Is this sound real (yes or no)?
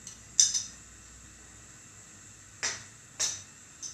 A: yes